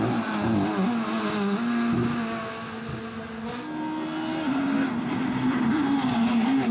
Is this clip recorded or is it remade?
recorded